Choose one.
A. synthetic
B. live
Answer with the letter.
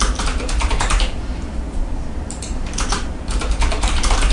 A